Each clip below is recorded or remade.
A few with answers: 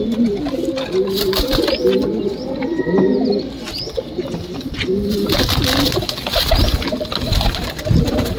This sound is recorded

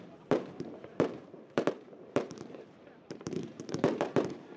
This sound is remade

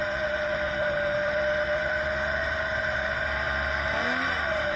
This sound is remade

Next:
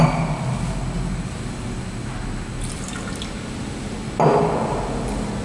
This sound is recorded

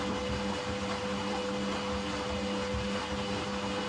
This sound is recorded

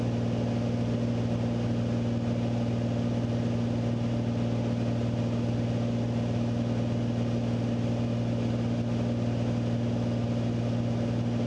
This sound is recorded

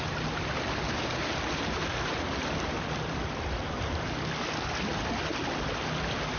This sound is recorded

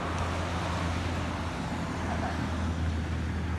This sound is recorded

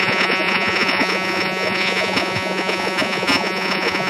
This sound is remade